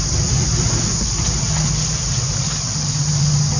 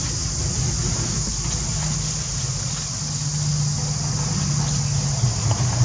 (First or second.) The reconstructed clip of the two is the first